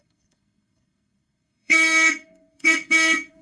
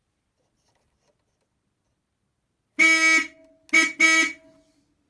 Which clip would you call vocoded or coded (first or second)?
first